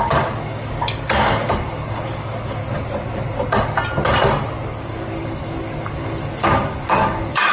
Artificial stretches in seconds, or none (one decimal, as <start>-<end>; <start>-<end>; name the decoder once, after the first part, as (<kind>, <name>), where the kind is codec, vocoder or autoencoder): 0.0-2.6 (codec, DAC); 4.8-7.5